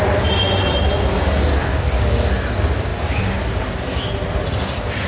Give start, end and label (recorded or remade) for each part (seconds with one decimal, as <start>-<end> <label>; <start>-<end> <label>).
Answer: 0.0-5.1 recorded